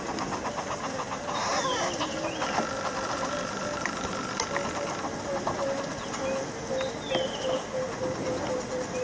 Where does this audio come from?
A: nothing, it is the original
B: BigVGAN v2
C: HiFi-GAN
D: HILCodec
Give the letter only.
A